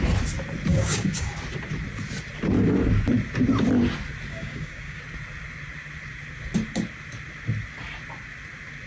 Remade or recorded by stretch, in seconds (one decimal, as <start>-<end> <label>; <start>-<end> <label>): 0.0-0.7 recorded; 0.7-1.3 remade; 1.3-4.3 recorded; 4.3-5.0 remade; 5.0-8.9 recorded